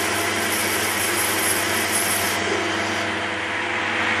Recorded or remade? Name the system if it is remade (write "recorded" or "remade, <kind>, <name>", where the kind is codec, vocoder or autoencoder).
recorded